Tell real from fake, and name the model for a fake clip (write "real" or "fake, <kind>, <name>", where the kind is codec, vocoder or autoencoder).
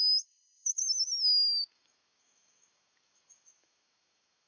fake, autoencoder, DAC-VAE